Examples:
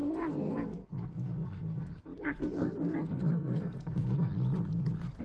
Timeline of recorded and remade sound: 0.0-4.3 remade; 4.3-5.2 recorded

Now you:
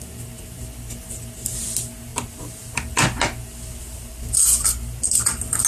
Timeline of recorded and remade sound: 0.0-5.7 recorded

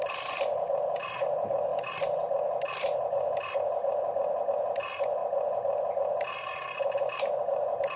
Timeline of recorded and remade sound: 0.0-8.0 recorded

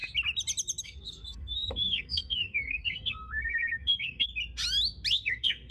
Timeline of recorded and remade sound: 0.0-0.8 recorded; 0.8-4.3 remade; 4.3-5.1 recorded; 5.1-5.7 remade

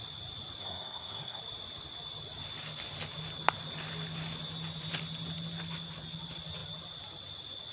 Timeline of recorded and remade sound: 0.0-0.6 recorded; 0.6-1.4 remade; 1.4-7.7 recorded

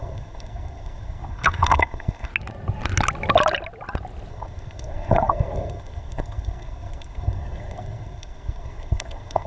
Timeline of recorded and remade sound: 0.0-2.3 remade; 2.3-4.3 recorded; 4.3-9.5 remade

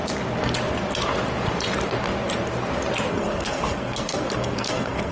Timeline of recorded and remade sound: 0.0-3.1 recorded; 3.1-5.1 remade